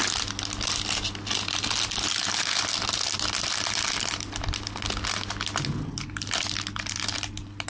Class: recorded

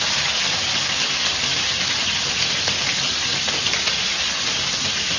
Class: recorded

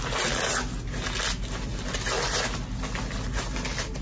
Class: recorded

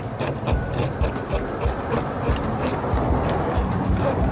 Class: recorded